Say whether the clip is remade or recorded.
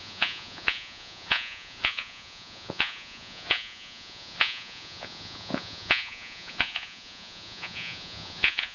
remade